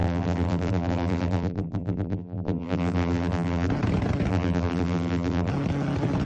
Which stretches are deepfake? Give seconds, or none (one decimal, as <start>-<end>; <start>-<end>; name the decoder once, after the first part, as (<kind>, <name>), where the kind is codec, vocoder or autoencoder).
0.0-3.7 (vocoder, BigVGAN v2); 4.3-5.5